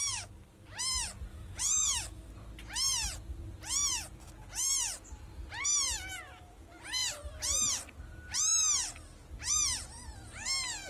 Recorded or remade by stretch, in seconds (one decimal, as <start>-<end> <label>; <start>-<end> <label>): 0.0-1.3 recorded; 1.3-2.3 remade; 2.3-10.9 recorded